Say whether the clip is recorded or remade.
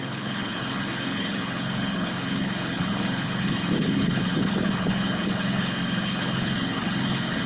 remade